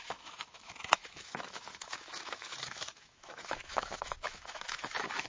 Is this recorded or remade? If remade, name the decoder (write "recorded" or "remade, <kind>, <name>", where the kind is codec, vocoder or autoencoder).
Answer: remade, autoencoder, DAC-VAE